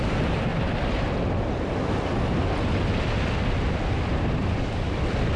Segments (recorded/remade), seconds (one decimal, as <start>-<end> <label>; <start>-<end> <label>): 0.0-5.4 recorded